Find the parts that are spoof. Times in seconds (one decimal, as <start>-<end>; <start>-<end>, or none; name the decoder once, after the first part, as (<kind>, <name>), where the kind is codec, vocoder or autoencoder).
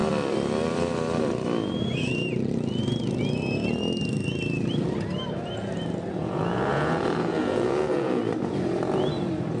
6.2-8.2 (vocoder, Vocos)